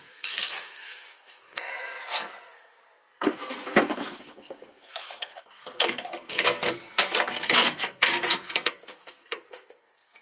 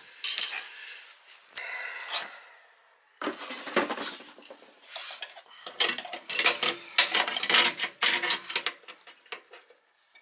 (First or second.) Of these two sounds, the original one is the second